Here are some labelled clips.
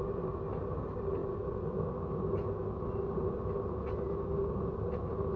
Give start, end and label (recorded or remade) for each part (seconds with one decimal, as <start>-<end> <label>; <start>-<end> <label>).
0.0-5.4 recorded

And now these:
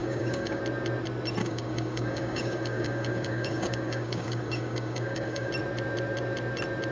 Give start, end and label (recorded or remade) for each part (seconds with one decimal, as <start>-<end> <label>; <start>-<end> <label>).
0.0-0.6 remade; 0.6-1.4 recorded; 1.4-5.5 remade; 5.5-6.9 recorded

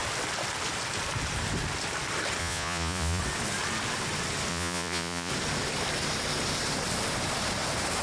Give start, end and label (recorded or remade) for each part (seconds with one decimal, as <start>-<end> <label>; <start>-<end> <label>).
0.0-2.4 recorded; 2.4-3.2 remade; 3.2-4.5 recorded; 4.5-5.3 remade; 5.3-8.0 recorded